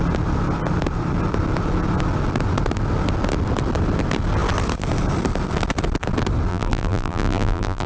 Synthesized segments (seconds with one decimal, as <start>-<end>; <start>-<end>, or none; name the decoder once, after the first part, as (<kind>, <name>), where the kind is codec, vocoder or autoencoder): 6.5-7.9 (vocoder, BigVGAN v2)